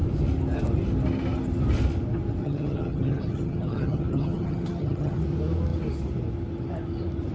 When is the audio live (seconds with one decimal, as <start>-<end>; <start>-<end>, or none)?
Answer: 0.0-2.4; 5.2-7.3